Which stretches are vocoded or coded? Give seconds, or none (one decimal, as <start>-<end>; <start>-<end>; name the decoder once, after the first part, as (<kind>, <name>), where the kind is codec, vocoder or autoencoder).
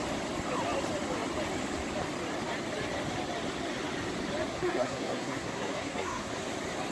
4.5-6.3 (codec, SNAC)